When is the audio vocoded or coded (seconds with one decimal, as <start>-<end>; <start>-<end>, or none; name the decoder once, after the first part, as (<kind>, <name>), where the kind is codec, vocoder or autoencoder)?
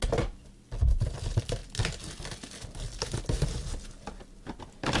none